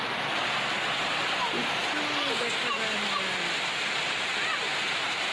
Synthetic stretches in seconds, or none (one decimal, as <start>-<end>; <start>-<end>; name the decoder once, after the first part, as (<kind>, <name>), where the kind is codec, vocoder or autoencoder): none